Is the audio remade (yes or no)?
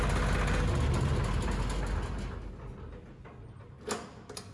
no